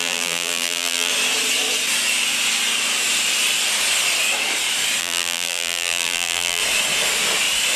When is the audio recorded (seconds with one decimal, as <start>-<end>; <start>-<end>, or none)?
1.1-5.0; 6.6-7.8